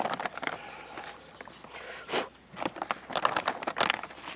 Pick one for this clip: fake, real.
real